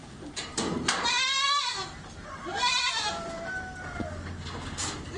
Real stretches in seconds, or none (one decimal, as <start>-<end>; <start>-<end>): 3.1-5.2